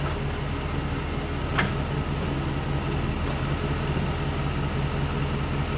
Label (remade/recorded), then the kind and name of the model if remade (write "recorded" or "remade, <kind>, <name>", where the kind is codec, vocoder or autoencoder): recorded